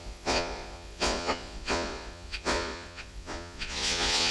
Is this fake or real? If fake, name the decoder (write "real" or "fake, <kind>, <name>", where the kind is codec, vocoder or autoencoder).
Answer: fake, vocoder, Vocos